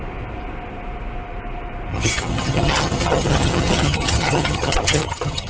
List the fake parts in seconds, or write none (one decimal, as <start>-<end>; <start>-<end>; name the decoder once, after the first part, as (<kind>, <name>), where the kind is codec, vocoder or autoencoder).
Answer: 1.9-5.5 (vocoder, HiFi-GAN)